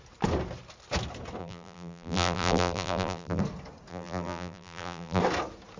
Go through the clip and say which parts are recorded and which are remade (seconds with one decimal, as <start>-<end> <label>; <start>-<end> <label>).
0.0-1.4 recorded; 1.4-3.4 remade; 3.4-3.9 recorded; 3.9-5.2 remade; 5.2-5.8 recorded